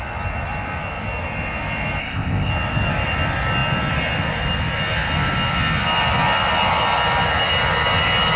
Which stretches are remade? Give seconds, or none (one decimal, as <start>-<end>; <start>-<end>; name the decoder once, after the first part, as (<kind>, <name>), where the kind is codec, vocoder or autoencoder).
2.0-2.5 (codec, ZipCodec)